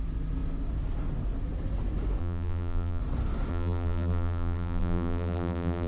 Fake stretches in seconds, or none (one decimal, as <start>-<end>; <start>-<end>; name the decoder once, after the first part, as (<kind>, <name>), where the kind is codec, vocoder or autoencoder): 2.2-3.0 (vocoder, BigVGAN v2); 3.5-5.9